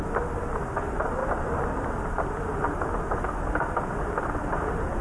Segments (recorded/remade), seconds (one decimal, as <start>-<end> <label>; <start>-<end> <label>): 0.0-5.0 recorded